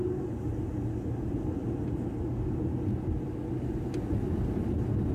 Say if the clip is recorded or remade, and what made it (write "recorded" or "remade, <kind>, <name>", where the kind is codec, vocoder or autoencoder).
recorded